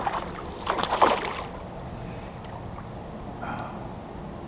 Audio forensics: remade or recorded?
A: recorded